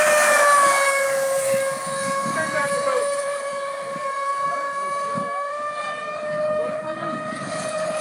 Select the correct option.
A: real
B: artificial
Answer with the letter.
B